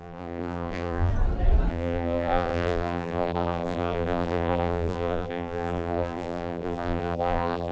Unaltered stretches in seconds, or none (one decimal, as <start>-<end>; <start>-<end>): 1.1-1.7